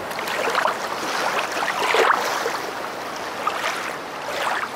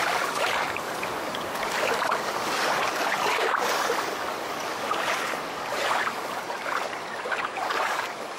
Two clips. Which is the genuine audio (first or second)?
first